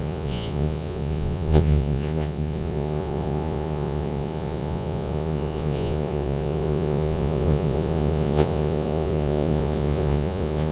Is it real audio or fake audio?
fake